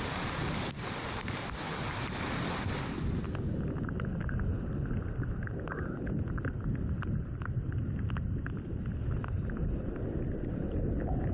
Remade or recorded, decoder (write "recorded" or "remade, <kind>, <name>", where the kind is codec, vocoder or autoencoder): recorded